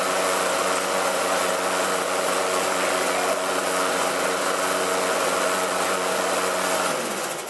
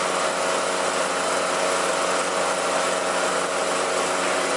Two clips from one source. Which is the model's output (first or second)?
first